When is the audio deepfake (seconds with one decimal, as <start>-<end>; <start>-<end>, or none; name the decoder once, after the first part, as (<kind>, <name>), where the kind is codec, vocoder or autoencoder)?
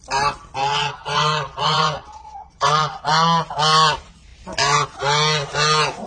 0.6-3.1 (vocoder, WaveNeXt)